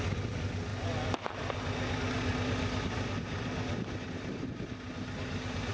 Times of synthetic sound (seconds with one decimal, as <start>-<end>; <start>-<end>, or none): none